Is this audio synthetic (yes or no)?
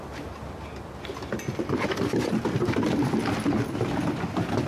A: no